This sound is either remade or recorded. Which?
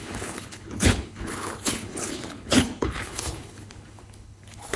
remade